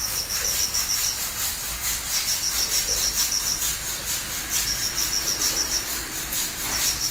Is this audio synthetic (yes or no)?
no